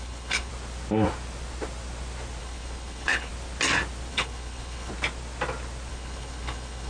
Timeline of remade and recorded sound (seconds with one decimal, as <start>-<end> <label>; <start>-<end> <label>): 0.0-0.5 remade; 0.5-2.4 recorded; 2.4-3.3 remade; 3.3-4.1 recorded; 4.1-4.9 remade; 4.9-5.9 recorded; 5.9-6.9 remade